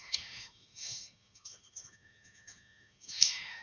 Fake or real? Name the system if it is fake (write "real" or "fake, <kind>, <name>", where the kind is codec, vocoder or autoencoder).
fake, autoencoder, DAC-VAE